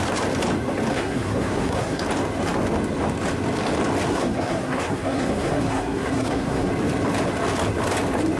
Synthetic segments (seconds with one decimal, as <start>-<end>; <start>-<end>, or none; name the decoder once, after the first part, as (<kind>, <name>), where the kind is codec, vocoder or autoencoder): 0.9-2.0 (codec, SNAC); 4.1-6.7